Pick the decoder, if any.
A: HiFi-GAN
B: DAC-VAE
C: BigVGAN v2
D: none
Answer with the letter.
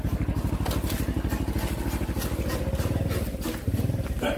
D